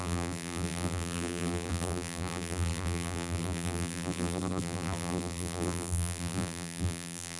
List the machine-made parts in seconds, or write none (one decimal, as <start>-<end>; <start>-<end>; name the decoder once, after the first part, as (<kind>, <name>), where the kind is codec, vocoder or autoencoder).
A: 0.0-7.4 (vocoder, BigVGAN v2)